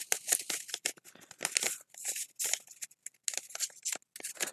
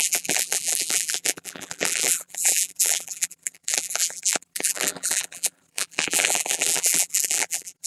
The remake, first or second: second